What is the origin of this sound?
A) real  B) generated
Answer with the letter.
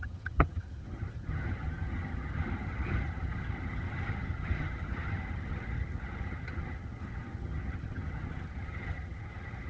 B